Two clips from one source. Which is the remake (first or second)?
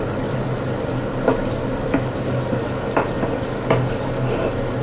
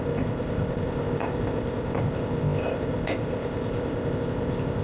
second